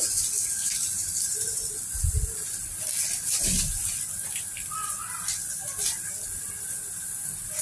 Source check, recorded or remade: recorded